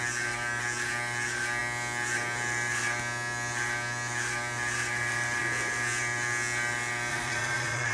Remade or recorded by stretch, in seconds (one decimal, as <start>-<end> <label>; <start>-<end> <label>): 0.0-7.1 recorded; 7.1-7.9 remade